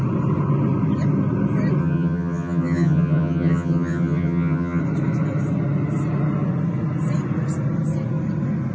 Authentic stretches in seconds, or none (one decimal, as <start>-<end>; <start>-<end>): 0.0-1.8; 4.8-8.7